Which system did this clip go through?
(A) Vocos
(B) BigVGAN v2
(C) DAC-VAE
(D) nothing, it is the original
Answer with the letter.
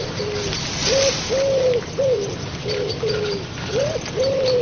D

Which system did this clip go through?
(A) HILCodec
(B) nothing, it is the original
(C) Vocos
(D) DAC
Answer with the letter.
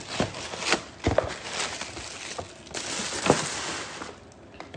B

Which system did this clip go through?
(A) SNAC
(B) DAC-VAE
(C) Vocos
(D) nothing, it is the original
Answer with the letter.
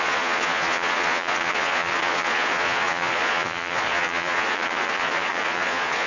C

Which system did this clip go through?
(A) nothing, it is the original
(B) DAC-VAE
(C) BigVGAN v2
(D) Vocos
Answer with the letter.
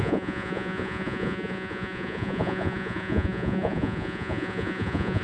D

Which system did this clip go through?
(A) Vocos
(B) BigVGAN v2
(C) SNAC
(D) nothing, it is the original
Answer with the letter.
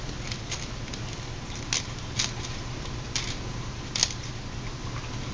D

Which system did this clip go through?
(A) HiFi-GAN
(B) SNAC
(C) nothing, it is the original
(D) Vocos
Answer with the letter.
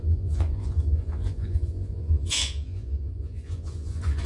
D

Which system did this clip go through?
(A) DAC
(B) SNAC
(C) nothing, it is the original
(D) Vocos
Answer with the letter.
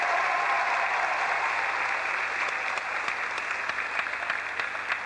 C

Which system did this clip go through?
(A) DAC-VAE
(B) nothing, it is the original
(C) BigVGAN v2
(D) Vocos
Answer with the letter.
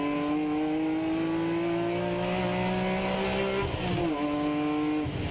B